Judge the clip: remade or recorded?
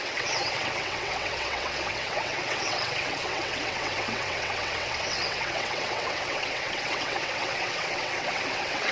remade